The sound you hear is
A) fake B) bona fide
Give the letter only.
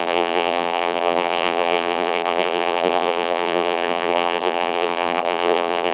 A